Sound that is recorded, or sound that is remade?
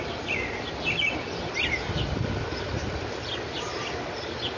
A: recorded